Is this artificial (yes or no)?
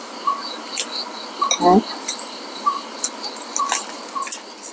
no